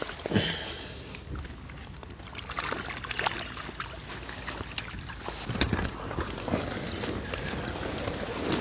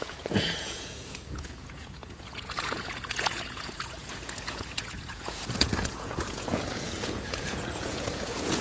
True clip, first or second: first